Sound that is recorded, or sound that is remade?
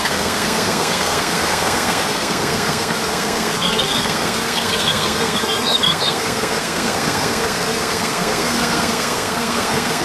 remade